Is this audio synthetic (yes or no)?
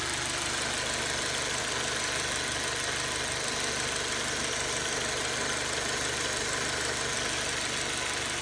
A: no